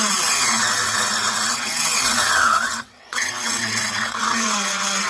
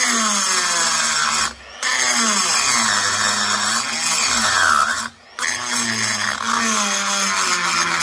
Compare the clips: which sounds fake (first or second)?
first